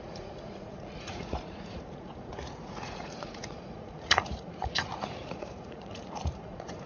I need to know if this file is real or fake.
fake